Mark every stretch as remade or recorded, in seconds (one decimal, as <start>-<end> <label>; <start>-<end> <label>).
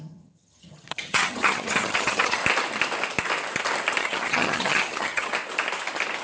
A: 0.0-2.4 remade; 2.4-4.0 recorded; 4.0-5.3 remade; 5.3-6.2 recorded